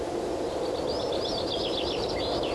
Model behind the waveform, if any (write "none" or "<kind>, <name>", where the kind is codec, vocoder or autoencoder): none